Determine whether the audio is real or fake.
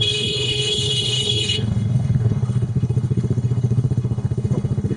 fake